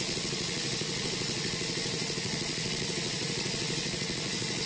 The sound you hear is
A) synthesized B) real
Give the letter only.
A